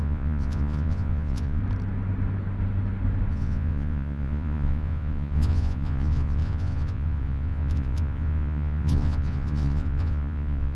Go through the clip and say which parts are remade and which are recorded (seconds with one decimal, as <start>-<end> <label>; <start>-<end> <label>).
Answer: 0.0-1.6 remade; 1.6-3.3 recorded; 3.3-10.8 remade